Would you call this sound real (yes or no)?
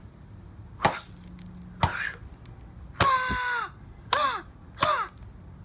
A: yes